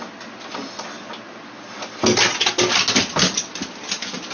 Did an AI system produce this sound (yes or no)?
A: no